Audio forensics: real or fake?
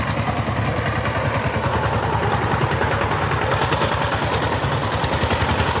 real